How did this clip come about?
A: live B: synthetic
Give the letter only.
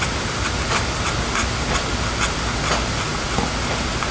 A